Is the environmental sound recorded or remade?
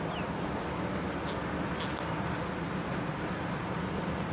recorded